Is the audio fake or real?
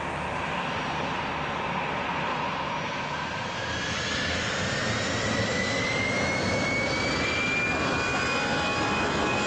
real